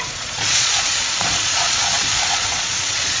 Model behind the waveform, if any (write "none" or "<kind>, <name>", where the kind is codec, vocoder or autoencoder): vocoder, Vocos